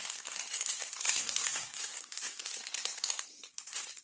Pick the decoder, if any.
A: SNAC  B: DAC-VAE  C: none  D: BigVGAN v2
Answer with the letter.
A